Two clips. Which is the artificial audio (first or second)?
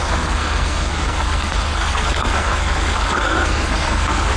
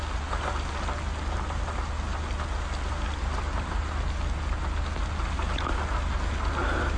first